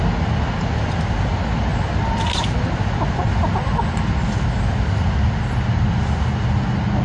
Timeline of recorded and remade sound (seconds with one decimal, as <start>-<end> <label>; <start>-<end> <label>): 0.0-7.0 recorded